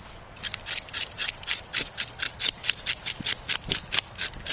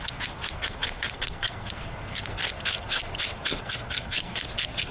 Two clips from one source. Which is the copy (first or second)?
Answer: second